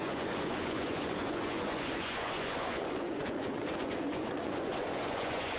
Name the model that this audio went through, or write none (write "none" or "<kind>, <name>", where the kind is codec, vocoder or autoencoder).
vocoder, Vocos